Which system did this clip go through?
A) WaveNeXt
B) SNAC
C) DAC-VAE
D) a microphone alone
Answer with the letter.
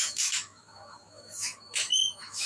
C